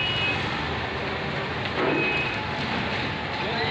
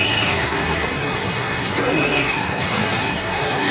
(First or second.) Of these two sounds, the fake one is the second